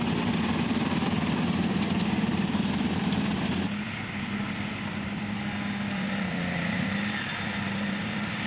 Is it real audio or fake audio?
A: fake